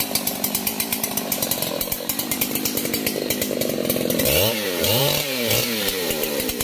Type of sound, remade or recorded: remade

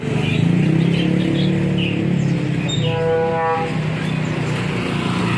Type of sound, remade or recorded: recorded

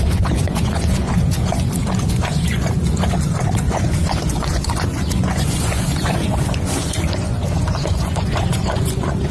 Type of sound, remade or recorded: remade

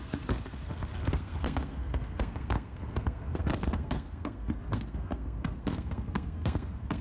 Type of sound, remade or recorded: remade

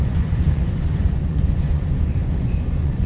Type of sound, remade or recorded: remade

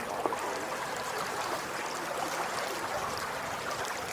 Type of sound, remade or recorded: recorded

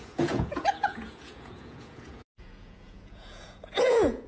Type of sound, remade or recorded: remade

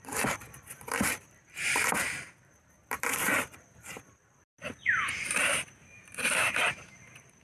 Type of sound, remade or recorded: remade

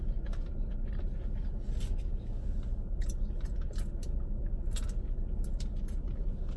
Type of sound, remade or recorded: recorded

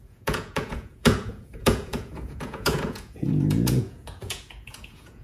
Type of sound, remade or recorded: remade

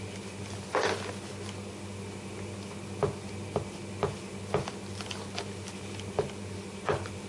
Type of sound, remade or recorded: recorded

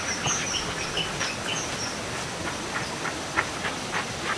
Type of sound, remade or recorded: recorded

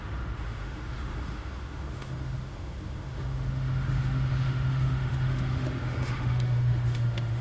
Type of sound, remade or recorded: remade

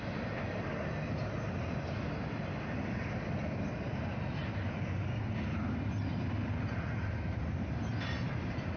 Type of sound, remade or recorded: recorded